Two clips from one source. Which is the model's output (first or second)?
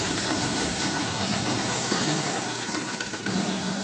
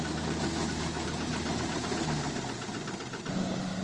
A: first